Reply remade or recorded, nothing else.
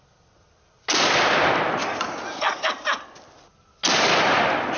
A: recorded